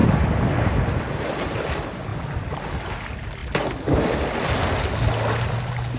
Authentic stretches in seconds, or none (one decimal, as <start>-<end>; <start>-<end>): 0.0-6.0

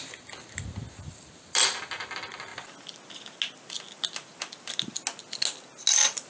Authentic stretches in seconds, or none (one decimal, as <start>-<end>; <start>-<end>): 0.0-6.3